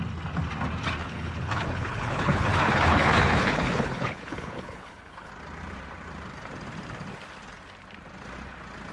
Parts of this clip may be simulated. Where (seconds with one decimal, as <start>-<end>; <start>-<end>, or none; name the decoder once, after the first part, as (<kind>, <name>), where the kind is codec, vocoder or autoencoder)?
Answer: 1.0-5.3 (codec, HILCodec)